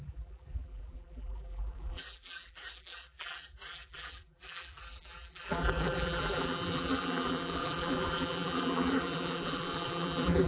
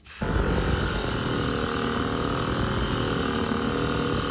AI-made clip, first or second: first